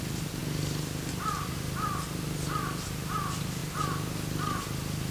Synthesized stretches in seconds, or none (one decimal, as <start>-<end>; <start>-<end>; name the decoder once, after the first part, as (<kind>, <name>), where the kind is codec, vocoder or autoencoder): none